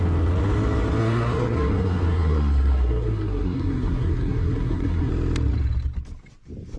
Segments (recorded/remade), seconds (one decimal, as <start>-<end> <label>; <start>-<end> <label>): 0.0-1.0 recorded; 1.0-5.1 remade; 5.1-6.8 recorded